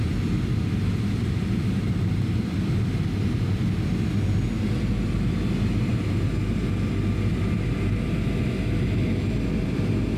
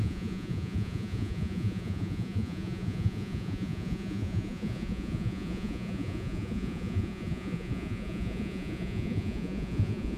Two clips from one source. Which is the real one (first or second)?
first